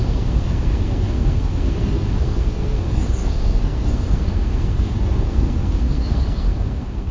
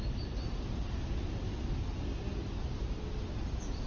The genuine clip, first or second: second